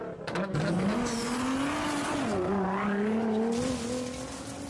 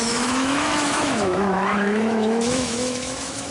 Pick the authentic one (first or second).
first